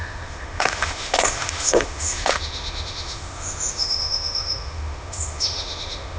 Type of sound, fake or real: fake